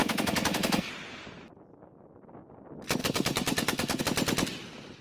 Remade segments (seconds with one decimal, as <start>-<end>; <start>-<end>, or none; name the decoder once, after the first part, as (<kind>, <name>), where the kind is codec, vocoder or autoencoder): 0.0-0.9 (codec, SNAC); 3.0-4.0